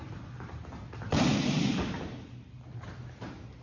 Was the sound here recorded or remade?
recorded